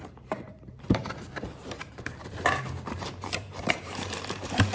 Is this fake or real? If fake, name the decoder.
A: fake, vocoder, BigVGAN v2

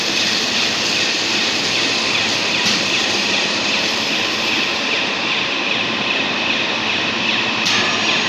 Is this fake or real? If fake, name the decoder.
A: fake, vocoder, BigVGAN v2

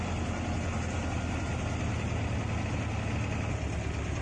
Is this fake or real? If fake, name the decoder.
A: real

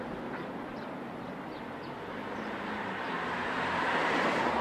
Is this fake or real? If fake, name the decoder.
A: fake, vocoder, BigVGAN v2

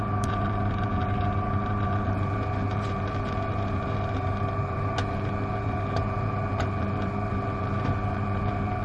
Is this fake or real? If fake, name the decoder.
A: fake, vocoder, BigVGAN v2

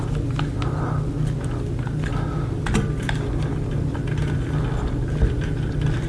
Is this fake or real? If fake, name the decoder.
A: real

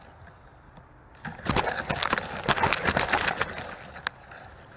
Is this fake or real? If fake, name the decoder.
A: real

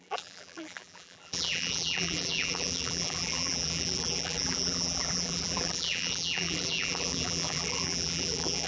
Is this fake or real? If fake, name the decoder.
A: fake, vocoder, BigVGAN v2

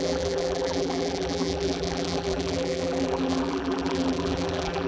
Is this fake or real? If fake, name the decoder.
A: fake, vocoder, BigVGAN v2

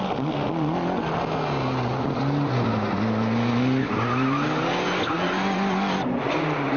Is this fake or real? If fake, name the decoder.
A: real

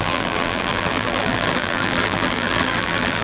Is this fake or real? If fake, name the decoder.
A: fake, vocoder, BigVGAN v2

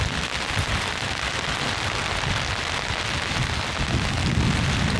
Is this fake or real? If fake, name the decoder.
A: real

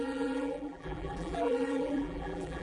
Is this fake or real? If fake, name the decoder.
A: fake, vocoder, BigVGAN v2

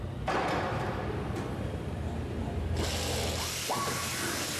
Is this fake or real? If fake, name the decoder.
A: real